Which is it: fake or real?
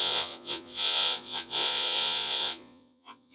fake